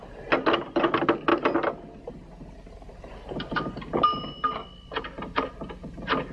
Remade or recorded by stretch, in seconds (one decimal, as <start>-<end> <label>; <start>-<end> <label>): 0.0-6.3 recorded